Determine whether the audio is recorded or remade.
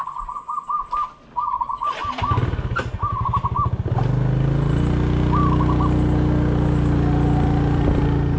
recorded